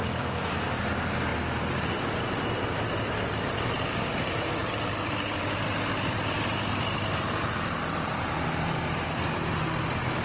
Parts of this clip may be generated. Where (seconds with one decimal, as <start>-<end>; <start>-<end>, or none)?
0.0-0.8; 1.3-2.5; 4.6-8.2